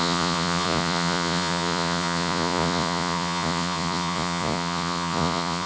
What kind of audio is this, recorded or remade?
remade